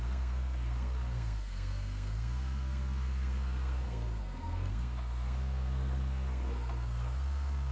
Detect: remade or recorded remade